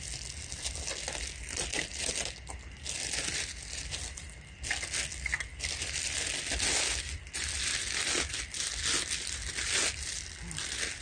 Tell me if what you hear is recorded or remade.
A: recorded